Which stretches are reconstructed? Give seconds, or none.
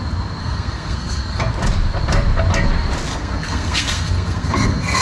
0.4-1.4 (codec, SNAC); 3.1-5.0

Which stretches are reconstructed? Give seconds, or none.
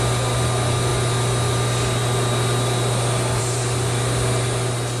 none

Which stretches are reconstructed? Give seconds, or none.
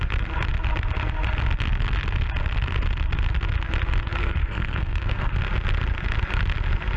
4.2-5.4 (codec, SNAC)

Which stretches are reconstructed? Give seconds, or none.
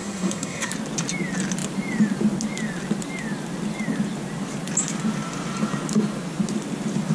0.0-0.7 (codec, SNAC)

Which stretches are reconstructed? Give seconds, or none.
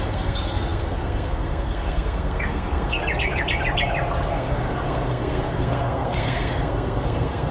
0.0-3.0 (codec, SNAC); 4.3-7.5